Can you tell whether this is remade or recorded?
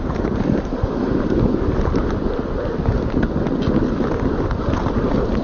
recorded